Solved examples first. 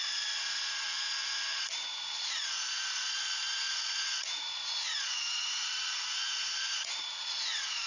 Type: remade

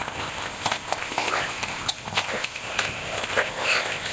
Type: remade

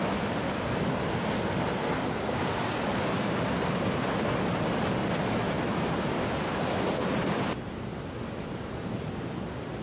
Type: recorded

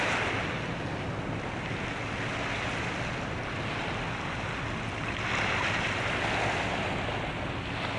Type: recorded